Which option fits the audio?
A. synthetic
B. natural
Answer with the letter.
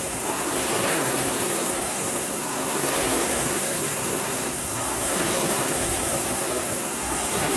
A